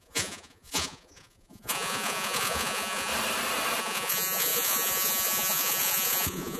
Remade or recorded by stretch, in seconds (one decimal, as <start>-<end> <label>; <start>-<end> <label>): 0.0-3.1 remade; 3.1-3.8 recorded; 3.8-6.6 remade